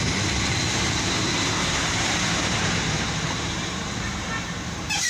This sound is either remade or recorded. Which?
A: remade